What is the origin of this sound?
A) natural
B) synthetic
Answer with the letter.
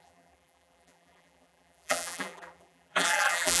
B